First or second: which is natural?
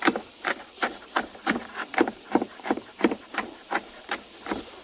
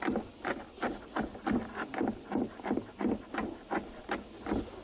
second